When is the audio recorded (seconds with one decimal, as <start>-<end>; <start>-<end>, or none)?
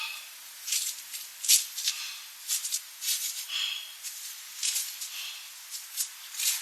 1.3-2.4; 4.5-5.3